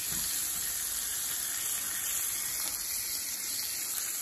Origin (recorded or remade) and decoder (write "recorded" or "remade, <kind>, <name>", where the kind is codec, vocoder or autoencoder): recorded